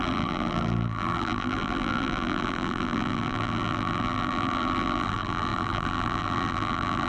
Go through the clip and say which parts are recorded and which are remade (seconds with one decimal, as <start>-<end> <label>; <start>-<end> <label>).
0.0-7.1 remade